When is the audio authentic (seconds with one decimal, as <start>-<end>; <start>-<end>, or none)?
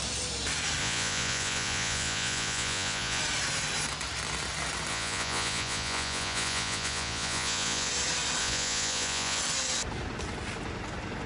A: 0.0-0.8; 3.2-4.9; 7.9-8.4; 9.4-11.3